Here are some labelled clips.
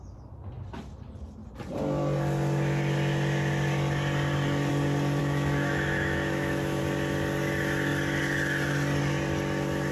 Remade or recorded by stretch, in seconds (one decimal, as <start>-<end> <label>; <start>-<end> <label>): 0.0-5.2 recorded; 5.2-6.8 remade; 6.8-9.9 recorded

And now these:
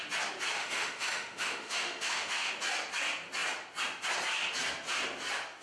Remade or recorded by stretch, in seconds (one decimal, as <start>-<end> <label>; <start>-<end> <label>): 0.0-0.6 recorded; 0.6-2.5 remade; 2.5-5.6 recorded

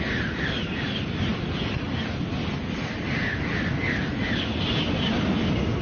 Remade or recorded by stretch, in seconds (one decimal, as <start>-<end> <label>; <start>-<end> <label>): 0.0-5.8 recorded

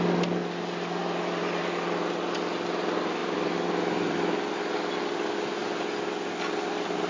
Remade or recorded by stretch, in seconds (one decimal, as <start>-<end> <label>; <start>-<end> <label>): 0.0-1.0 recorded; 1.0-1.6 remade; 1.6-3.2 recorded; 3.2-4.3 remade; 4.3-7.1 recorded